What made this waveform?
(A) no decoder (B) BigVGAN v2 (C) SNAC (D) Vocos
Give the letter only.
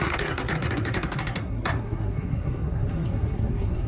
C